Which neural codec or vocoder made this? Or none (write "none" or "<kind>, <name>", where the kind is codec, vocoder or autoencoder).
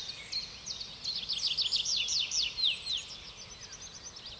none